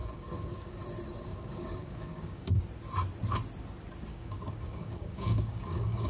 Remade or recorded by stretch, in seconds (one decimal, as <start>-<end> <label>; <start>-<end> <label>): 0.0-0.8 remade; 0.8-1.3 recorded; 1.3-2.6 remade; 2.6-4.1 recorded; 4.1-6.1 remade